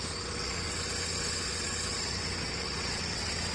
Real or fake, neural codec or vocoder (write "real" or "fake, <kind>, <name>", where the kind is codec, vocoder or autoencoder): fake, vocoder, WaveNeXt